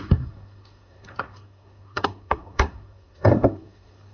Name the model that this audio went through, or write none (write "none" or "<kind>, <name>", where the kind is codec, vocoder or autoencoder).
codec, SNAC